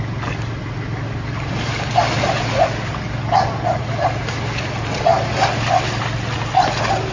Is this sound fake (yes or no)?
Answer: no